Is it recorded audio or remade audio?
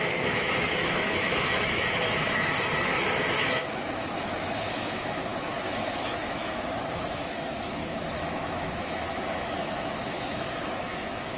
remade